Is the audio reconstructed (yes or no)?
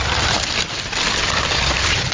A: yes